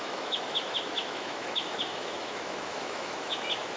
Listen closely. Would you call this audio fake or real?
fake